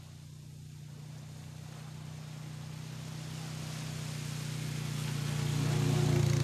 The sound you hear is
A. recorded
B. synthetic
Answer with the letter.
A